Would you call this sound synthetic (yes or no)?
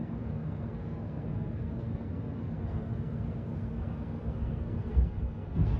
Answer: yes